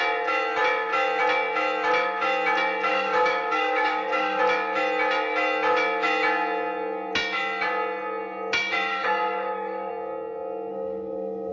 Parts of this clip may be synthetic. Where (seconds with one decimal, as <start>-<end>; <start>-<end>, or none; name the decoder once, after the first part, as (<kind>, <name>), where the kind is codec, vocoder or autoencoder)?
2.9-4.4 (codec, DAC); 8.9-9.9; 10.7-11.5